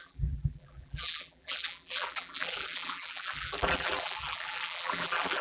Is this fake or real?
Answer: fake